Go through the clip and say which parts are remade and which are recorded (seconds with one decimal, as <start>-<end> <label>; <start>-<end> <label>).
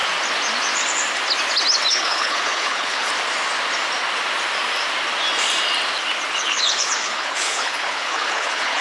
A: 0.0-1.9 recorded; 1.9-3.1 remade; 3.1-6.3 recorded; 6.3-8.8 remade